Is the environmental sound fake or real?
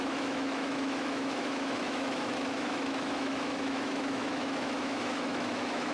fake